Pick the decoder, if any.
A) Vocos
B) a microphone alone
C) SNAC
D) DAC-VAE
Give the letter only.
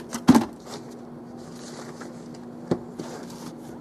B